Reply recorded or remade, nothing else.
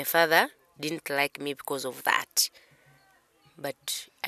recorded